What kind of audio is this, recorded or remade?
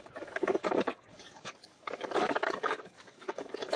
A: remade